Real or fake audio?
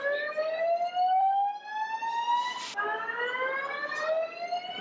real